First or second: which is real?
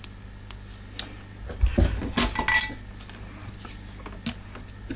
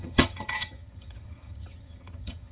first